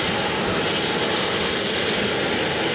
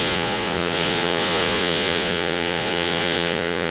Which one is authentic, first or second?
first